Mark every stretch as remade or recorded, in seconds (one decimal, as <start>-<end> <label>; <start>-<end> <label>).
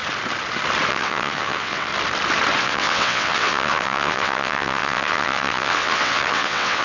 0.0-0.9 recorded; 0.9-1.9 remade; 1.9-2.6 recorded; 2.6-6.8 remade